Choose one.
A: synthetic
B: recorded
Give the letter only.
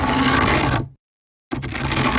B